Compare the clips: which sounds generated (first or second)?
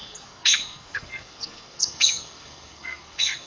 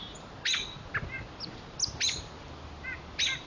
first